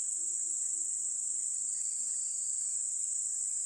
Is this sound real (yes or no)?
yes